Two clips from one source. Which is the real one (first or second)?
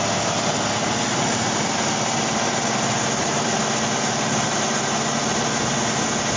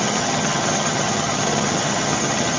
first